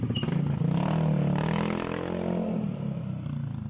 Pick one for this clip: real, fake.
real